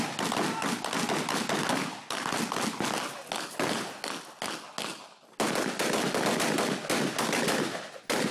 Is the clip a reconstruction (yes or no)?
no